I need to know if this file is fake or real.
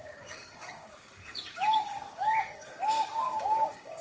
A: fake